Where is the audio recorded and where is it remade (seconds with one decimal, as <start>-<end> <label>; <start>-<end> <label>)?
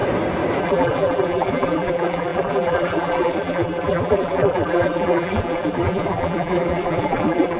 0.0-0.6 recorded; 0.6-7.6 remade